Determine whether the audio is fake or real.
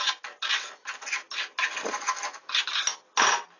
real